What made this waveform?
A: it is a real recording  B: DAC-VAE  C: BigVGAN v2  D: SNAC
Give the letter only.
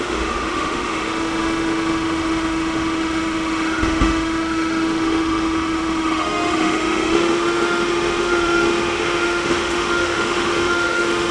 B